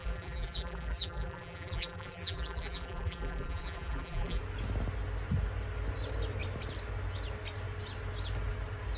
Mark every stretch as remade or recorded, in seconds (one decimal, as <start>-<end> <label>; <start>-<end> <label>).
0.0-4.4 remade; 4.4-9.0 recorded